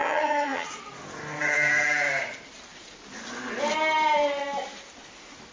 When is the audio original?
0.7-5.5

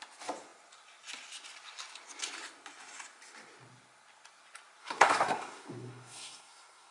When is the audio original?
0.0-4.8

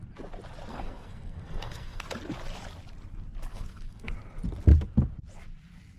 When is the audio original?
0.0-0.7; 2.0-3.5; 4.1-6.0

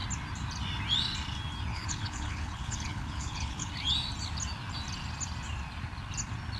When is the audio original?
0.0-1.7; 3.7-6.6

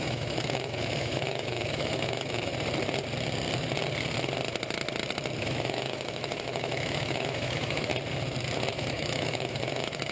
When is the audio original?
2.5-5.4; 7.9-8.7